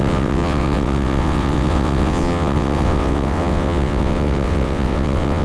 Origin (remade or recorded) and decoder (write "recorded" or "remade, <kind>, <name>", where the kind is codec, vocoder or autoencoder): remade, vocoder, WaveNeXt